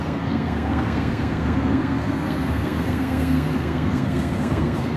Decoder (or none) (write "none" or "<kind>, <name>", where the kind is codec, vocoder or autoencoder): codec, SNAC